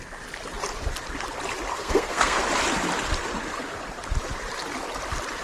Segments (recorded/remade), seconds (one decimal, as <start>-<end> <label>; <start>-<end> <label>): 0.0-1.7 recorded; 1.7-2.4 remade; 2.4-5.4 recorded